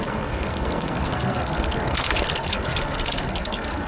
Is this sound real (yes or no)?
no